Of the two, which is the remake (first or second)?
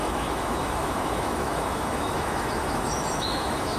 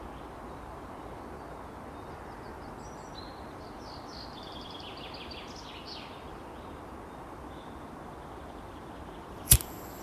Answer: first